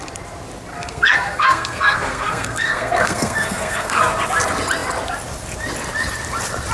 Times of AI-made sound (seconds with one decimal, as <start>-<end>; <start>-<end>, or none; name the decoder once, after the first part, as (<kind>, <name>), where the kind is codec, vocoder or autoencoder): 0.7-4.0 (codec, SNAC)